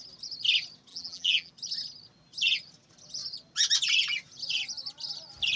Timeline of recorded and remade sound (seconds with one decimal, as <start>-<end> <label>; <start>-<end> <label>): 0.0-0.9 recorded; 0.9-1.5 remade; 1.5-5.6 recorded

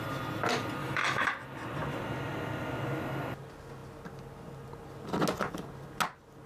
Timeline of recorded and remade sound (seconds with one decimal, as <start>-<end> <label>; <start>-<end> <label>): 0.0-0.8 recorded; 0.8-1.3 remade; 1.3-6.5 recorded

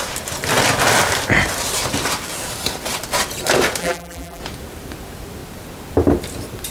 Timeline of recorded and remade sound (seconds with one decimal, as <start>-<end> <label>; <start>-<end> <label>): 0.0-3.8 recorded; 3.8-4.4 remade; 4.4-6.7 recorded

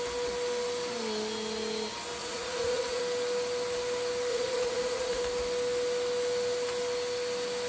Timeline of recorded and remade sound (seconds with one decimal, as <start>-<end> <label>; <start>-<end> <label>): 0.0-2.2 recorded; 2.2-3.0 remade; 3.0-4.3 recorded; 4.3-5.2 remade; 5.2-7.7 recorded

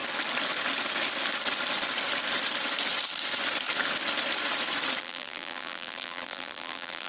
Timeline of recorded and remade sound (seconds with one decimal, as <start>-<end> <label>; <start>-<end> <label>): 0.0-5.0 recorded; 5.0-7.1 remade

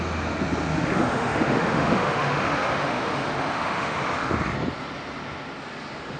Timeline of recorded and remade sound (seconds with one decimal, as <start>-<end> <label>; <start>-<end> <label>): 0.0-0.7 recorded; 0.7-4.4 remade; 4.4-6.2 recorded

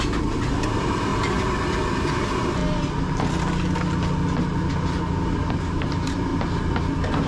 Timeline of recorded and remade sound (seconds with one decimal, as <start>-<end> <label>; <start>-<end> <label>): 0.0-1.1 remade; 1.1-1.9 recorded; 1.9-2.6 remade; 2.6-5.5 recorded; 5.5-6.3 remade; 6.3-7.3 recorded